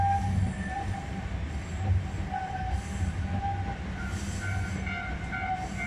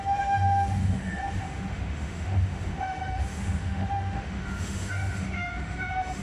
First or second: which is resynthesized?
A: second